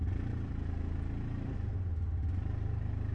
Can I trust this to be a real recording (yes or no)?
no